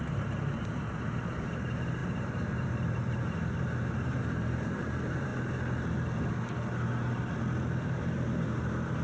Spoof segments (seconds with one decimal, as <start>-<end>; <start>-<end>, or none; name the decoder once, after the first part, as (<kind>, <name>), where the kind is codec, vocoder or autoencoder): 0.0-5.3 (vocoder, BigVGAN v2); 7.8-9.0